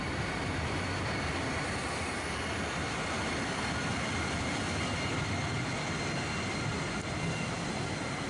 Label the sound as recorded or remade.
recorded